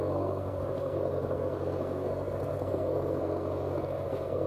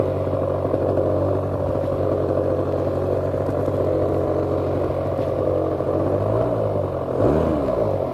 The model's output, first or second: first